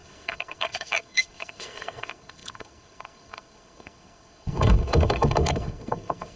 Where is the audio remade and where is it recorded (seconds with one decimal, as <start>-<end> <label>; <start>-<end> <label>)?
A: 0.0-6.4 remade